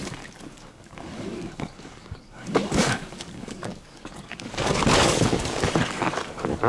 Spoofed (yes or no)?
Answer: yes